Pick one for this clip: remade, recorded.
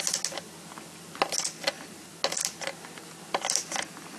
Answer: recorded